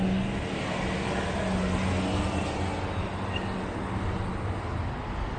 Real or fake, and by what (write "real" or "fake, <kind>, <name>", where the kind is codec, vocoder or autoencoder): real